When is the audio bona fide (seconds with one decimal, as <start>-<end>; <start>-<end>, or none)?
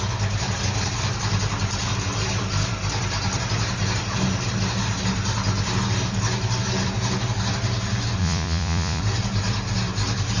0.0-8.2; 9.0-10.4